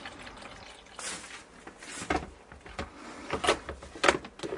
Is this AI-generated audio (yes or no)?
no